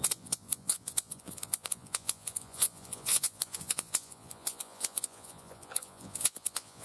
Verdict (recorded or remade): remade